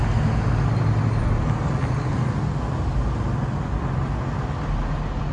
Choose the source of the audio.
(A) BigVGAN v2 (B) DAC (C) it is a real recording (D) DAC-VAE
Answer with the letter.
C